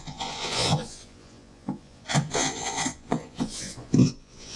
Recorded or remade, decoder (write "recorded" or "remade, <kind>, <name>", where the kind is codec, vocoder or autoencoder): remade, vocoder, Vocos